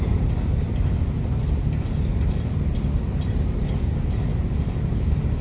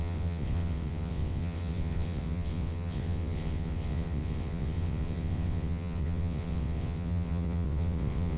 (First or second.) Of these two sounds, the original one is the first